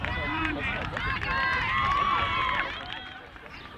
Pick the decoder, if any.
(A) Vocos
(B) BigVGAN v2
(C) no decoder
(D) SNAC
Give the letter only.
B